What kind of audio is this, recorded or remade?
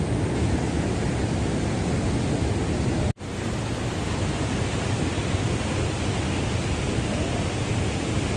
recorded